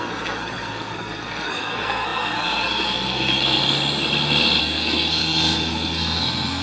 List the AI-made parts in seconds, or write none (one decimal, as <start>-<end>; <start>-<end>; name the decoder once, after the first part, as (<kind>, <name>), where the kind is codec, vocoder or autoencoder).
0.0-3.6 (codec, SNAC); 4.6-6.6